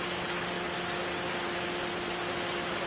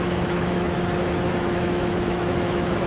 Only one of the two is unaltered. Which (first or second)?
first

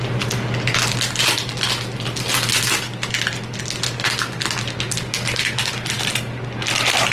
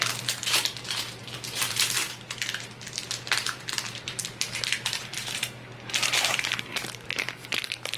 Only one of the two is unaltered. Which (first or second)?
first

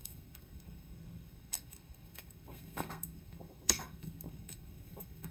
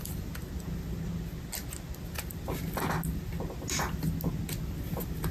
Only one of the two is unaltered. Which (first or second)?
second